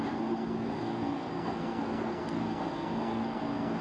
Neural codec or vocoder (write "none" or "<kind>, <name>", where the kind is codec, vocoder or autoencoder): codec, SNAC